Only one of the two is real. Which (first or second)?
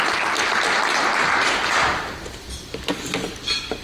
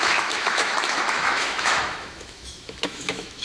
first